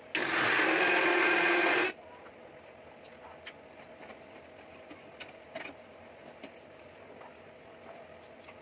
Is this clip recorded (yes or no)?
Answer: yes